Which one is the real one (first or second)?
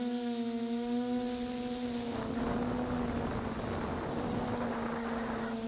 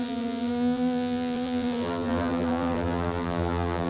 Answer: first